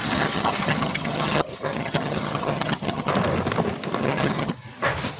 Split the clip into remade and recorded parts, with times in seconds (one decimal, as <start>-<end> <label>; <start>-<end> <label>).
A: 0.0-3.1 remade; 3.1-4.0 recorded; 4.0-4.5 remade; 4.5-5.2 recorded